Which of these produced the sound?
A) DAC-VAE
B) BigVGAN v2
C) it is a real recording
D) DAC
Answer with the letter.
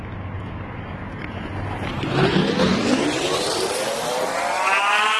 C